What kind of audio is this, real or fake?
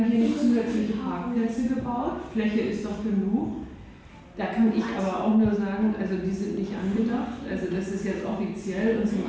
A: real